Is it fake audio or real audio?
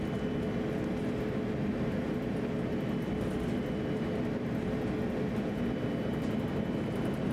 real